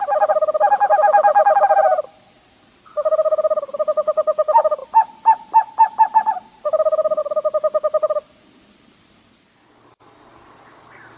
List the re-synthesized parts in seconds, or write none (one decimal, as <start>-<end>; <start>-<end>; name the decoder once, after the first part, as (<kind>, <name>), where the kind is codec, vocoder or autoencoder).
none